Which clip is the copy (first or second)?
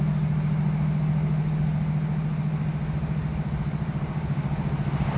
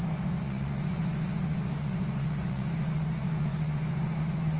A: second